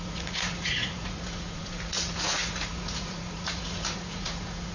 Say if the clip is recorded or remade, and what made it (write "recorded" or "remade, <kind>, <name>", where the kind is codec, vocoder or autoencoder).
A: remade, vocoder, Vocos